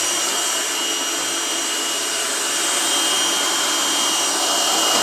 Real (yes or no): yes